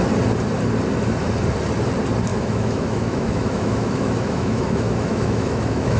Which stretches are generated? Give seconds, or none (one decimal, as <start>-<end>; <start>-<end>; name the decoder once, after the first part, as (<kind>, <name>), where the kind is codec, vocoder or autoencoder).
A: 2.3-6.0 (autoencoder, DAC-VAE)

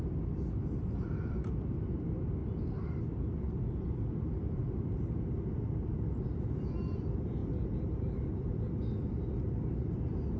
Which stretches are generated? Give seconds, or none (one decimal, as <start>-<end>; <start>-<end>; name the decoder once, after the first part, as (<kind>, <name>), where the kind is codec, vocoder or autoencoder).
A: 0.0-2.4 (vocoder, BigVGAN v2); 3.0-10.4